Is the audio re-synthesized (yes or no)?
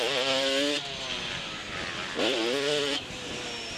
no